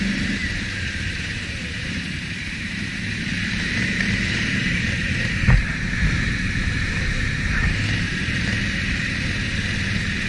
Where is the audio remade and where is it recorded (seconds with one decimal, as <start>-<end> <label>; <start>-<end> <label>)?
0.0-10.3 remade